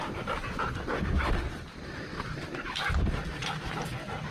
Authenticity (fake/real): fake